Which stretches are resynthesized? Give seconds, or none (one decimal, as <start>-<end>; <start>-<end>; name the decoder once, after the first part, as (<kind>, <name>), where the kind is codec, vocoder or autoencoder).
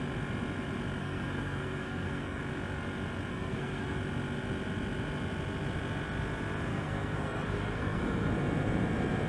1.0-2.4 (codec, SNAC); 3.3-4.0; 6.7-8.3